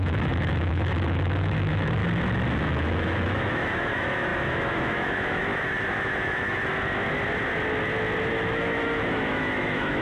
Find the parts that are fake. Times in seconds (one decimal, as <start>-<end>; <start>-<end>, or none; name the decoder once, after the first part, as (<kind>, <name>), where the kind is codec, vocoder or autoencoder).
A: 0.0-2.0 (autoencoder, DAC-VAE); 2.6-6.7; 8.3-10.0